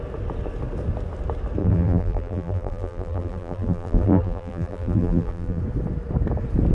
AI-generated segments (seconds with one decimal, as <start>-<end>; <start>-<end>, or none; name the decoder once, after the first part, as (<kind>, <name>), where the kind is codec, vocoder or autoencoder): 1.6-5.6 (vocoder, BigVGAN v2)

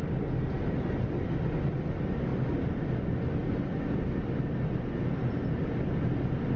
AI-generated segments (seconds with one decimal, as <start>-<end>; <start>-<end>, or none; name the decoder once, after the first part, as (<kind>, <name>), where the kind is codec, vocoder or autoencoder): none